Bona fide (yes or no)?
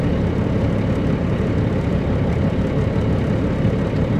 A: no